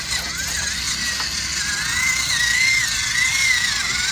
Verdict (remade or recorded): recorded